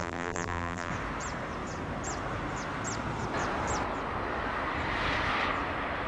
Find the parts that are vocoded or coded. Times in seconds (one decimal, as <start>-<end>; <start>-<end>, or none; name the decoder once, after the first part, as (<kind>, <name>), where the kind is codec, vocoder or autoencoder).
0.0-0.9 (vocoder, BigVGAN v2)